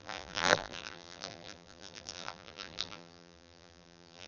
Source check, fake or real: fake